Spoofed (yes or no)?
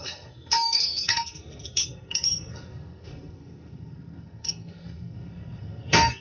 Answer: yes